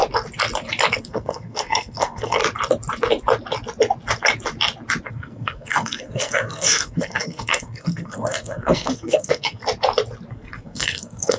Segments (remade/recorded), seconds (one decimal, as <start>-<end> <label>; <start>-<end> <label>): 0.0-1.0 recorded; 1.0-2.4 remade; 2.4-5.1 recorded; 5.1-9.6 remade; 9.6-10.3 recorded; 10.3-11.4 remade